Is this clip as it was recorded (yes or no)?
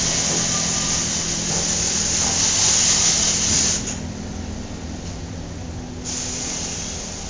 yes